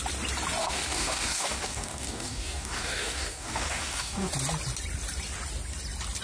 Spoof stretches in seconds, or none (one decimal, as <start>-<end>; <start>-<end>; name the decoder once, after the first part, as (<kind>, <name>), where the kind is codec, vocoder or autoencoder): 0.6-4.3 (codec, DAC)